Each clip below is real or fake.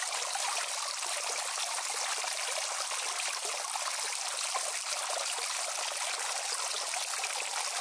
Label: real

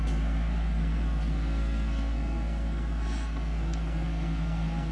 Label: fake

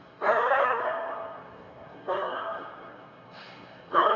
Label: fake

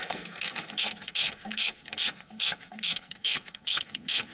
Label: fake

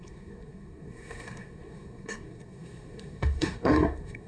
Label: fake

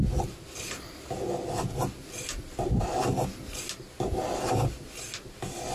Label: real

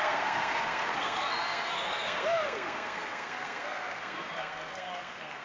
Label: fake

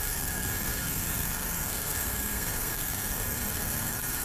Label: fake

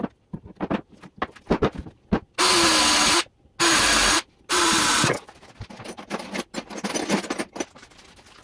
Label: real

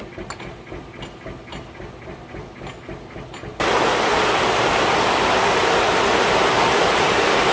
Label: real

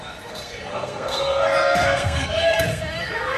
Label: fake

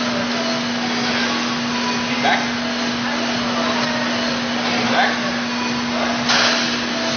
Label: real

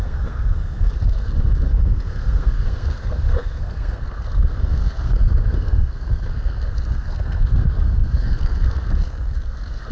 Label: fake